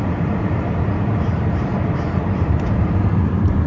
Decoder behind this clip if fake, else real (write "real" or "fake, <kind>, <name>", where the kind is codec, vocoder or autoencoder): fake, vocoder, BigVGAN v2